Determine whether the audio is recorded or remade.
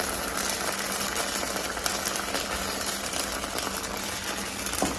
recorded